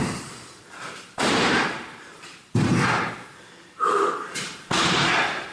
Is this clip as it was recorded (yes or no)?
no